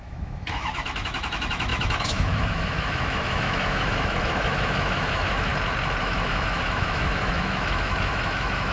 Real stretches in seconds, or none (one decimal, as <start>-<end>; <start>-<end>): 5.5-6.0

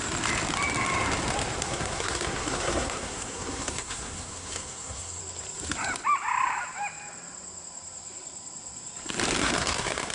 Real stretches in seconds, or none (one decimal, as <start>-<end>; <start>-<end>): 0.0-1.6; 5.2-9.4

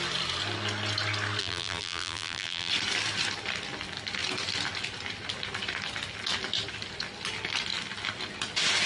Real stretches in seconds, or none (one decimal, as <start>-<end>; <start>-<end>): 0.0-1.4; 2.7-8.9

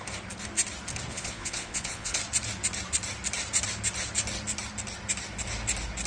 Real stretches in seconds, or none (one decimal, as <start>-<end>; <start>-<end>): 0.0-1.1; 2.2-6.1

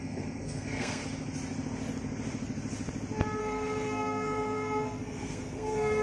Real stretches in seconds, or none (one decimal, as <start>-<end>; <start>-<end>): 1.0-3.4

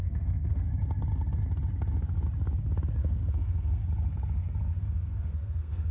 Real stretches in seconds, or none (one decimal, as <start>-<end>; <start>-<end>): 0.7-3.0; 3.8-4.8

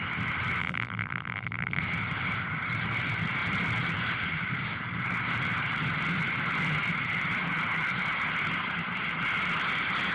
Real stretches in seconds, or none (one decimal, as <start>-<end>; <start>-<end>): 0.0-0.6; 1.8-10.1